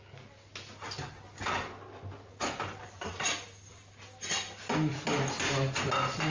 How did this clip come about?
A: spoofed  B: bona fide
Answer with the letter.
B